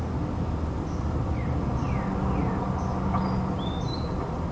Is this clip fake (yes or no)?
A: no